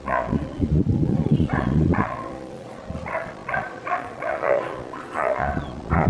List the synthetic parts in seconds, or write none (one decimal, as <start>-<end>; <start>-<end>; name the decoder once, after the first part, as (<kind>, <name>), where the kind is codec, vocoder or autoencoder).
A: 0.0-6.1 (vocoder, Vocos)